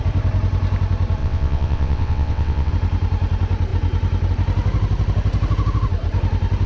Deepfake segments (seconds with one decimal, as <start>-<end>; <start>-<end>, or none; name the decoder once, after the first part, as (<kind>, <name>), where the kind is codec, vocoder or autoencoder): 1.2-2.7 (vocoder, WaveNeXt)